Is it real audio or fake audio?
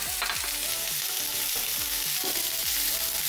real